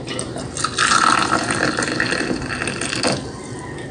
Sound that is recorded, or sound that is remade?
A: recorded